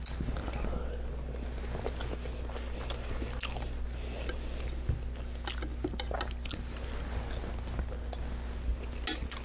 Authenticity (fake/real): real